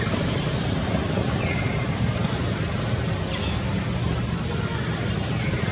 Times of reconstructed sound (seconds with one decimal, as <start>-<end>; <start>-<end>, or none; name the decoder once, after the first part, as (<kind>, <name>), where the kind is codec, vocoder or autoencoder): 0.0-2.2 (vocoder, BigVGAN v2)